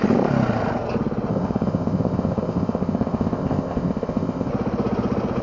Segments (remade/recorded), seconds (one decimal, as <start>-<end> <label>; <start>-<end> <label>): 0.0-1.3 recorded; 1.3-4.5 remade; 4.5-5.4 recorded